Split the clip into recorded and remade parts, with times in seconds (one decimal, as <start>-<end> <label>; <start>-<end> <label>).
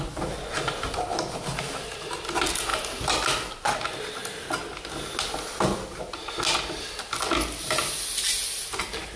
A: 0.0-9.2 recorded